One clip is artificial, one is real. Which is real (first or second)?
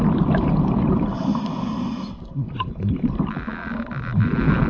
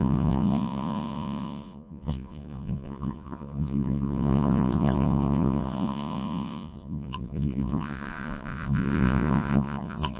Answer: first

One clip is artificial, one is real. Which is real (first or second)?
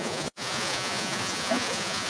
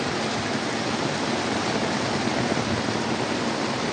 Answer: second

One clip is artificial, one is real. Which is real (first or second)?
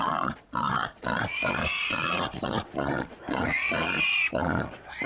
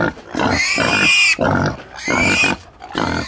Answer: second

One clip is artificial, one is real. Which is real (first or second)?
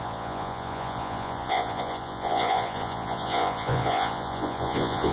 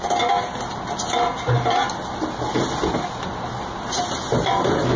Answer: second